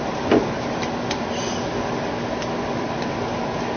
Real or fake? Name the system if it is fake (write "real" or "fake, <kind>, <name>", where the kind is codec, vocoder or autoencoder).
real